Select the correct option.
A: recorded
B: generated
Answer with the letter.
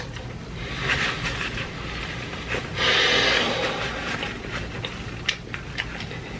A